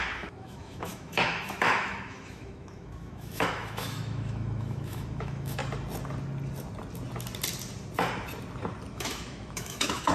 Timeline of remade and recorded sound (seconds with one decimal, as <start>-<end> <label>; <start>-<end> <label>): 0.0-5.6 remade; 5.6-8.9 recorded; 8.9-10.1 remade